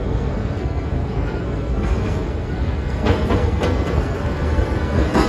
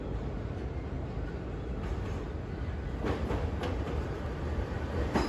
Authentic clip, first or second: second